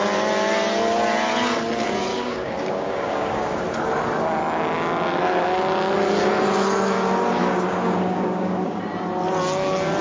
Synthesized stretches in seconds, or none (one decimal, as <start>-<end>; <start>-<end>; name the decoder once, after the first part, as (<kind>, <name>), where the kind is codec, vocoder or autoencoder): 2.1-3.6 (codec, DAC); 7.4-8.8